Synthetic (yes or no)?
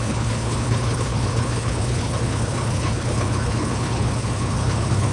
yes